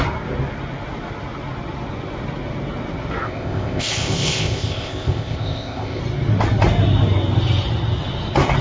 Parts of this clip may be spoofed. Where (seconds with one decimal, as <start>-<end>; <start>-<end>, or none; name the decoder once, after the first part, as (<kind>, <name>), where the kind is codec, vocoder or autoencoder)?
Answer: 3.2-6.0 (codec, ZipCodec)